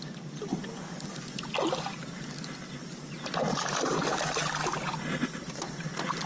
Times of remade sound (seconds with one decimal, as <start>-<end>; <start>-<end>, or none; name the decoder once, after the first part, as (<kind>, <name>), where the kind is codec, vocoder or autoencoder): none